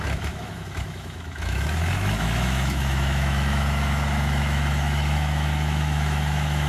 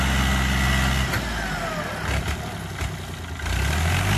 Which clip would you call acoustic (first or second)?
second